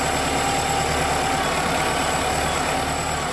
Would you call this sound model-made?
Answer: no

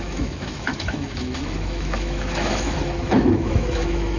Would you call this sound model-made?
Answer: yes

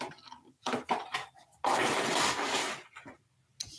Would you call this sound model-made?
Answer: no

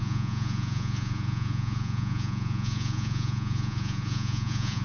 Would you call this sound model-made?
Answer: yes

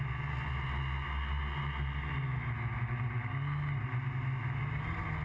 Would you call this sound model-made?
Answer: no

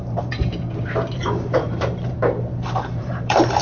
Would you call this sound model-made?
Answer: yes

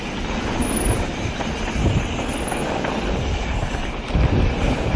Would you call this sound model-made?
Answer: no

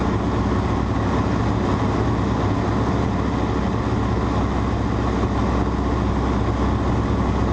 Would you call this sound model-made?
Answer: no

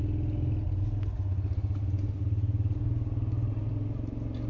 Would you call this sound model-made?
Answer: no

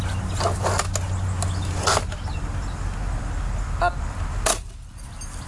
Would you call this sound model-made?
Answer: no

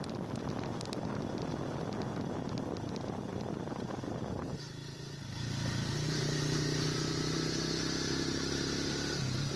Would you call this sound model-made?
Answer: no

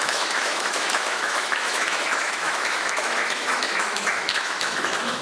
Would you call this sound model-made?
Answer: yes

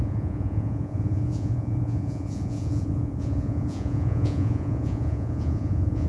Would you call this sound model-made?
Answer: yes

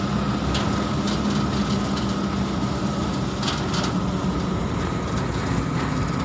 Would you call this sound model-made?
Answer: no